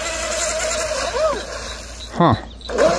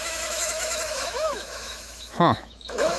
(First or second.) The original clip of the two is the first